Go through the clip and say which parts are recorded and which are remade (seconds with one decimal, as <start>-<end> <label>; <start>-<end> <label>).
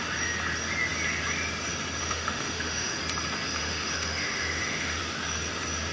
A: 0.0-2.0 recorded; 2.0-3.0 remade; 3.0-3.6 recorded; 3.6-5.0 remade; 5.0-5.9 recorded